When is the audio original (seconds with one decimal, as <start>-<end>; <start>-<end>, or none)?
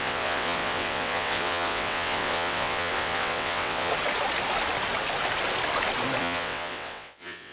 3.9-6.2